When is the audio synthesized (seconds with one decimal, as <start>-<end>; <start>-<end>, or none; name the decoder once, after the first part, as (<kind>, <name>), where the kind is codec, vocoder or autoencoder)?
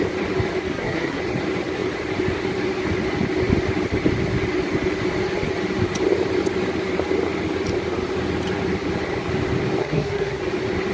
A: 0.7-1.2 (codec, SNAC); 9.8-10.4